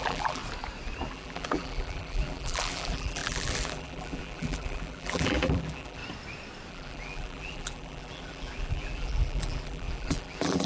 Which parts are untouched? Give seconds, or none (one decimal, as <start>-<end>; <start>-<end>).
0.4-1.1; 6.0-6.7